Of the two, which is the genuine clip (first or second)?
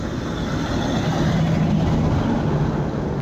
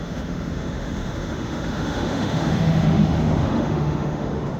first